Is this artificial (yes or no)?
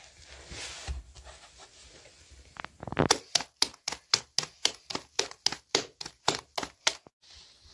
no